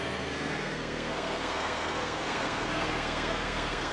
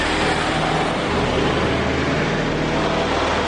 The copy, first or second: first